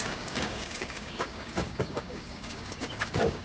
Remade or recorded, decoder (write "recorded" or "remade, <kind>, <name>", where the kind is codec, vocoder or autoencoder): remade, codec, DAC